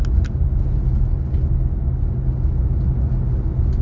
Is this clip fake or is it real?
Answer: real